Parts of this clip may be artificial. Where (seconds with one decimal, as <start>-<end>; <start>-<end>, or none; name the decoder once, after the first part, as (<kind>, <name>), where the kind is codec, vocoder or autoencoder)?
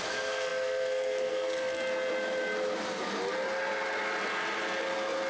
0.0-1.8 (codec, SNAC)